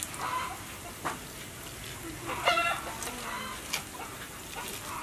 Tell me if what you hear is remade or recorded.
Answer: recorded